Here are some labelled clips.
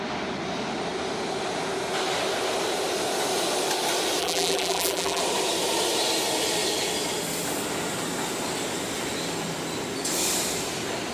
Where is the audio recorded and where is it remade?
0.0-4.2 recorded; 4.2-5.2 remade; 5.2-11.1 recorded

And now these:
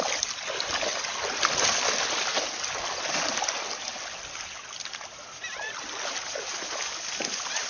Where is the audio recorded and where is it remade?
0.0-0.9 recorded; 0.9-1.5 remade; 1.5-7.7 recorded

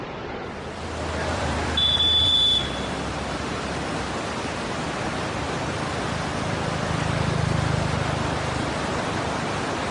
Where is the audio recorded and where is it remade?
0.0-1.3 recorded; 1.3-3.6 remade; 3.6-9.9 recorded

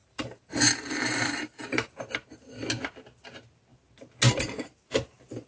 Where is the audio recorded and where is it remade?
0.0-2.0 remade; 2.0-5.5 recorded

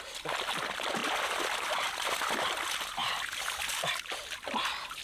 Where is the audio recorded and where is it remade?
0.0-5.0 remade

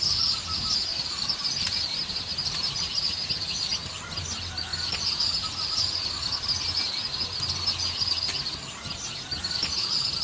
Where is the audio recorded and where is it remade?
0.0-0.8 recorded; 0.8-3.0 remade; 3.0-3.7 recorded; 3.7-4.2 remade; 4.2-10.2 recorded

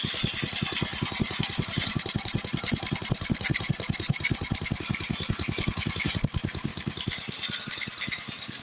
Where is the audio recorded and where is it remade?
0.0-0.9 recorded; 0.9-4.8 remade; 4.8-8.6 recorded